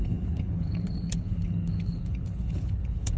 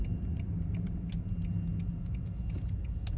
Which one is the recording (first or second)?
second